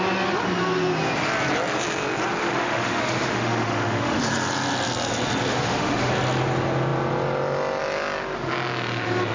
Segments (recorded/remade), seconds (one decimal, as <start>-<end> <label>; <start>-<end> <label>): 0.0-2.4 recorded; 2.4-4.2 remade; 4.2-5.5 recorded; 5.5-6.1 remade; 6.1-9.3 recorded